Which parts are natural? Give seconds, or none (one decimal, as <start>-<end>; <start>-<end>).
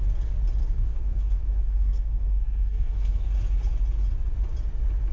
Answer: 0.0-0.6; 3.2-5.1